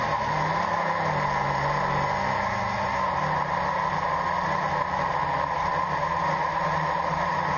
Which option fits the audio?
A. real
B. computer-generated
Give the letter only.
A